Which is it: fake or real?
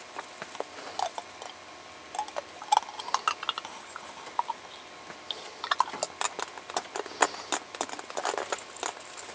real